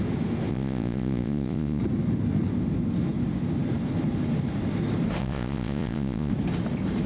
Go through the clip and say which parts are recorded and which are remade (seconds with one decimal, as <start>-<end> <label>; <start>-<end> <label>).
0.0-0.5 recorded; 0.5-1.8 remade; 1.8-5.2 recorded; 5.2-6.3 remade; 6.3-7.1 recorded